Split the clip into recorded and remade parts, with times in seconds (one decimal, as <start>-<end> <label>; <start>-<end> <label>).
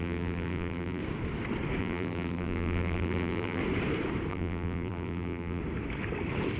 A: 0.0-1.0 remade; 1.0-1.8 recorded; 1.8-3.6 remade; 3.6-4.3 recorded; 4.3-5.6 remade; 5.6-6.6 recorded